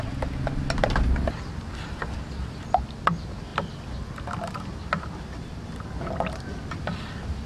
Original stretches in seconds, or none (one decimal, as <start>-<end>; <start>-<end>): 0.0-7.5